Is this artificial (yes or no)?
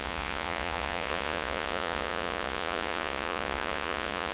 yes